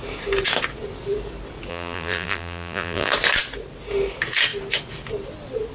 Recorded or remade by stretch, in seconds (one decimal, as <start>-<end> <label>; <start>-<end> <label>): 0.0-1.7 recorded; 1.7-3.1 remade; 3.1-5.7 recorded

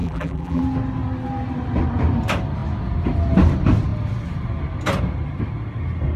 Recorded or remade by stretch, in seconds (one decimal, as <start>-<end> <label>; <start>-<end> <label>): 0.0-0.6 remade; 0.6-6.2 recorded